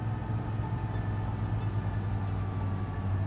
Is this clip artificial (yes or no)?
no